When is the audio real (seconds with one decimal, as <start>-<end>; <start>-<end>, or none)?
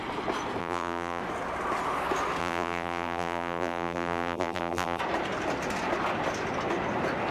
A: 0.0-0.6; 1.2-2.4; 5.0-7.3